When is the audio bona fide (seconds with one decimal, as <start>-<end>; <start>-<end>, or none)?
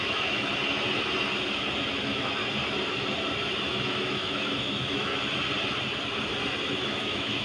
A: 0.5-1.9; 2.4-3.6; 5.1-6.8